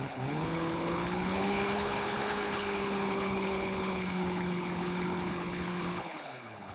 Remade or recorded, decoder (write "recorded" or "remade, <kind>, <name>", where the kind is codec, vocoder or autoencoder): remade, codec, HILCodec